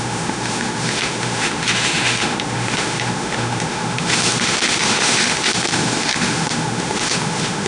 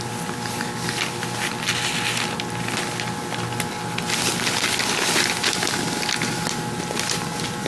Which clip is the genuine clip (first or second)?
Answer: second